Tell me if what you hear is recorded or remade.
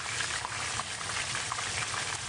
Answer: recorded